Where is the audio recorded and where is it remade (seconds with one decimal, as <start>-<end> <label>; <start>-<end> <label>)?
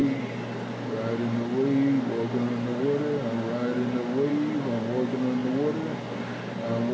0.0-6.9 recorded